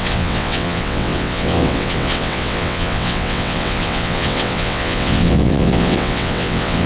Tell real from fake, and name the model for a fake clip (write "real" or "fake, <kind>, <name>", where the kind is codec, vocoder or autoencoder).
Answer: fake, vocoder, WaveNeXt